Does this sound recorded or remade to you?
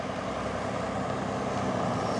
recorded